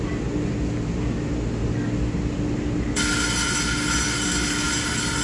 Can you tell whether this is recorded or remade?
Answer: recorded